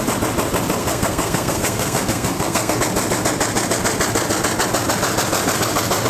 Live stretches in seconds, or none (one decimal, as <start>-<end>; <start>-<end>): 0.0-0.8; 2.8-6.1